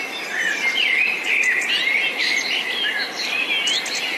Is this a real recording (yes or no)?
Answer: yes